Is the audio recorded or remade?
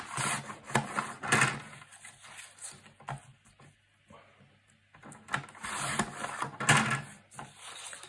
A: recorded